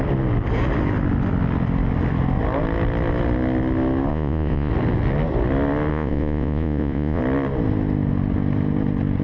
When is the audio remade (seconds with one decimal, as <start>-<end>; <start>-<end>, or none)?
4.1-4.7; 5.9-7.2